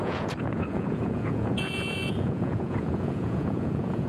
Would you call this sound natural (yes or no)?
no